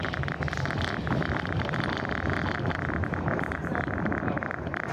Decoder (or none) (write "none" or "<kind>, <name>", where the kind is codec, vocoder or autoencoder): none